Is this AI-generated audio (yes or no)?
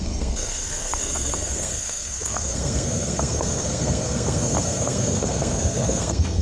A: yes